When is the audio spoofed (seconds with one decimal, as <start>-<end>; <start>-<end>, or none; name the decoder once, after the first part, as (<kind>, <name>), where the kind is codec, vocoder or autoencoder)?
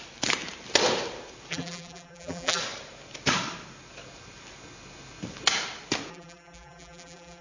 1.5-2.6 (vocoder, BigVGAN v2); 6.1-7.4